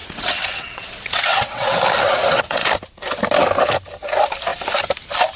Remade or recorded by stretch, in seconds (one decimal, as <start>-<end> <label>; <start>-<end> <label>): 0.0-1.8 remade; 1.8-2.2 recorded; 2.2-2.7 remade; 2.7-5.4 recorded